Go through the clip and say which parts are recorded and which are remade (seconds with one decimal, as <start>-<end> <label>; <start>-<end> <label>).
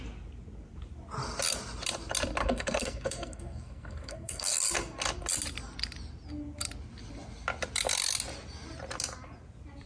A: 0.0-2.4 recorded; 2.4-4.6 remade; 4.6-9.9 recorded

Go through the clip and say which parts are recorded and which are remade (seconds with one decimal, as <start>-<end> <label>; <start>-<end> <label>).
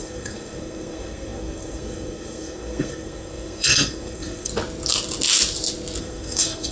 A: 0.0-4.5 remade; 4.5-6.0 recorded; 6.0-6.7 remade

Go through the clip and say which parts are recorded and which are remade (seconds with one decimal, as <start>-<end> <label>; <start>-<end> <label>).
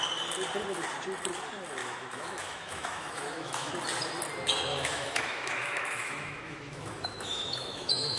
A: 0.0-1.8 recorded; 1.8-3.7 remade; 3.7-4.7 recorded; 4.7-8.2 remade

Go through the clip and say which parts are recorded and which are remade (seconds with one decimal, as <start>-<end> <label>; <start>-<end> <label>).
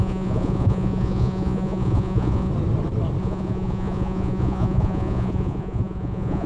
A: 0.0-2.5 remade; 2.5-3.2 recorded; 3.2-6.5 remade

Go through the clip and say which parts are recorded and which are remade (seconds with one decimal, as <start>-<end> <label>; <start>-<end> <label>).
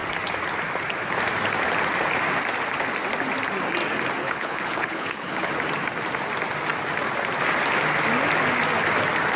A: 0.0-4.2 recorded; 4.2-5.5 remade; 5.5-9.4 recorded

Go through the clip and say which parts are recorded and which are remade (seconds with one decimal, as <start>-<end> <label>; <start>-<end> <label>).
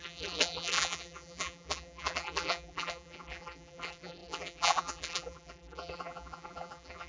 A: 0.0-7.1 remade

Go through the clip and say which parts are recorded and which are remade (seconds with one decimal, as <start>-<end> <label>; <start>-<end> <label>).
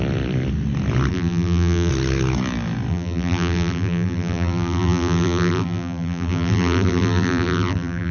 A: 0.0-1.1 recorded; 1.1-1.9 remade; 1.9-2.9 recorded; 2.9-8.1 remade